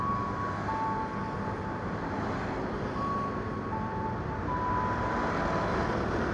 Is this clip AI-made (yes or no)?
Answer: no